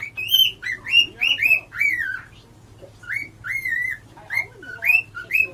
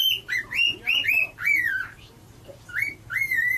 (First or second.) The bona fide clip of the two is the first